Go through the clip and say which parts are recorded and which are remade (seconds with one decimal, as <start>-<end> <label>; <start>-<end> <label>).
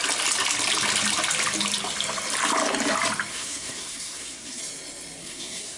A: 0.0-3.3 recorded; 3.3-4.6 remade; 4.6-5.2 recorded; 5.2-5.8 remade